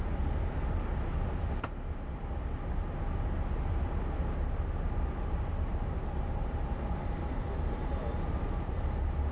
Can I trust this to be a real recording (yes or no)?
yes